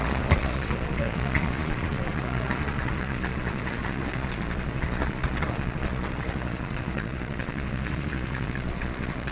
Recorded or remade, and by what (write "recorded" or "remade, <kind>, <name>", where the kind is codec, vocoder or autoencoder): remade, vocoder, Vocos